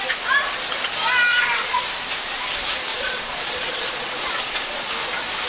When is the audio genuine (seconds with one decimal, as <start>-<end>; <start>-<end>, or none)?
0.0-1.3; 1.8-2.9; 4.9-5.5